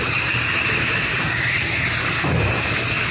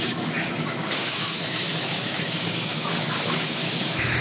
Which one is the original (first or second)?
first